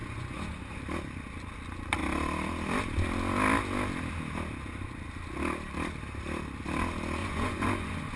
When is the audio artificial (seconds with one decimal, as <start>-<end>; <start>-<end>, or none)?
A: 0.0-0.8; 7.2-8.2